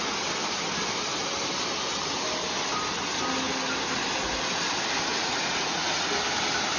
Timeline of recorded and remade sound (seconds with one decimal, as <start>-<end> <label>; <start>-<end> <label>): 0.0-5.1 recorded; 5.1-6.2 remade; 6.2-6.8 recorded